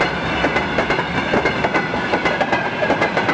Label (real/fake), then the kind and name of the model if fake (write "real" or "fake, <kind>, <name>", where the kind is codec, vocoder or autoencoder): real